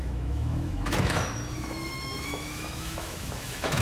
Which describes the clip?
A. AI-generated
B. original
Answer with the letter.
A